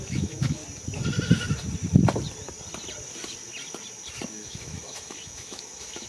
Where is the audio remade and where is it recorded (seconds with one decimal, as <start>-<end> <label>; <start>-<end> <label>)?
0.0-0.6 remade; 0.6-4.3 recorded; 4.3-6.1 remade